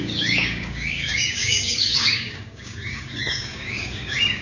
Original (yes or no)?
no